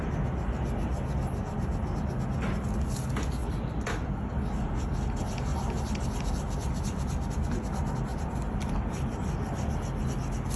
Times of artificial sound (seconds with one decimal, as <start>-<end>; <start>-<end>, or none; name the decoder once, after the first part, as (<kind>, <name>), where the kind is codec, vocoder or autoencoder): 3.4-4.2 (vocoder, BigVGAN v2); 8.1-9.7